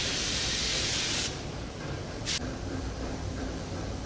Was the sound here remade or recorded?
remade